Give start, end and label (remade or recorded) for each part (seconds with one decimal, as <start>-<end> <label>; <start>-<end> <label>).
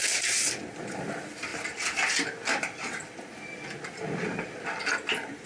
0.0-5.5 recorded